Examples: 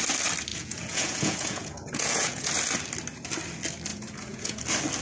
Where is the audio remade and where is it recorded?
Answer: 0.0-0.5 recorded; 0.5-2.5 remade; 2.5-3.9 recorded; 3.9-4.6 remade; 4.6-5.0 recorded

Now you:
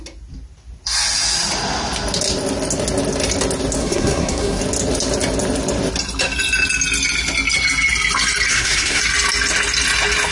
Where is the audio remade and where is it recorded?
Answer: 0.0-3.8 recorded; 3.8-4.6 remade; 4.6-8.5 recorded; 8.5-9.0 remade; 9.0-10.3 recorded

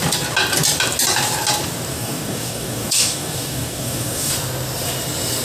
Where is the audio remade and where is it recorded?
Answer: 0.0-1.9 recorded; 1.9-4.3 remade; 4.3-5.4 recorded